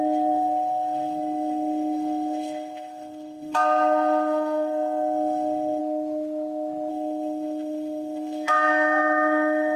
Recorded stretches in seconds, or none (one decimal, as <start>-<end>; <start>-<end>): 5.8-6.9